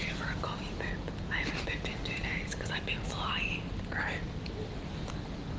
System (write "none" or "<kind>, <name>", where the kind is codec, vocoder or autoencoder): none